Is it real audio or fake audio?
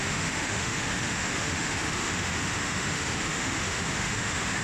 fake